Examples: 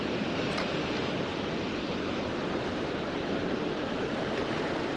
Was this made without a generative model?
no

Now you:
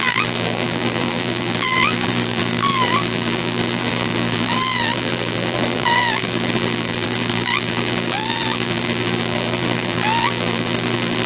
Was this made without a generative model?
no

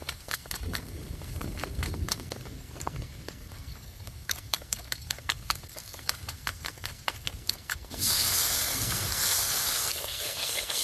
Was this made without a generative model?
no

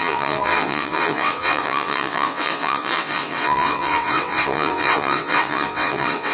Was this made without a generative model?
no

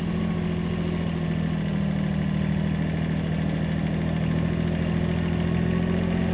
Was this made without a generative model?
yes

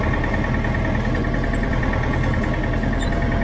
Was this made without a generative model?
yes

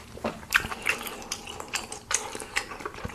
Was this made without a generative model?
no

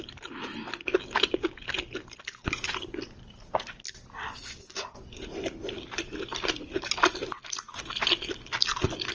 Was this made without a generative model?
yes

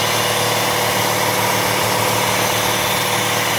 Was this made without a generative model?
yes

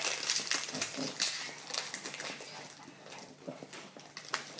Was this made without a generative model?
yes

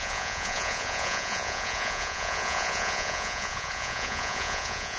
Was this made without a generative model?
no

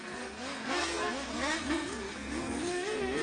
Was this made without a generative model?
no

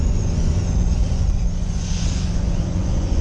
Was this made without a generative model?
no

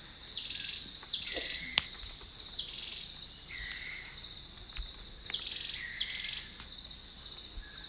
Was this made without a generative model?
yes